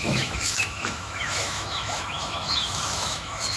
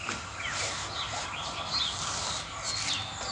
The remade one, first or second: first